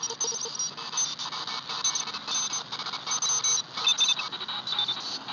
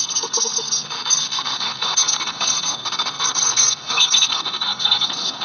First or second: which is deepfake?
second